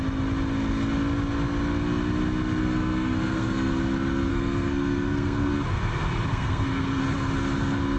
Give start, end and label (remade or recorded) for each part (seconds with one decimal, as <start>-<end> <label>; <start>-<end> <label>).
0.0-2.6 recorded; 2.6-3.7 remade; 3.7-4.3 recorded; 4.3-5.5 remade; 5.5-6.3 recorded; 6.3-7.0 remade; 7.0-8.0 recorded